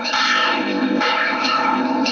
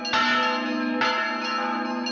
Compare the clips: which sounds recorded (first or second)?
second